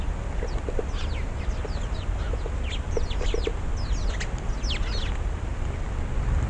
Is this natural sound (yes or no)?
yes